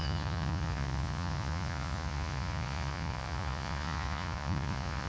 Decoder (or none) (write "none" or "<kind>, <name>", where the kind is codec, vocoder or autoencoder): vocoder, Vocos